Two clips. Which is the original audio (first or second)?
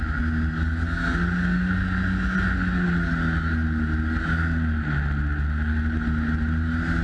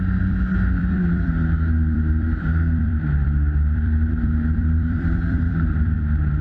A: first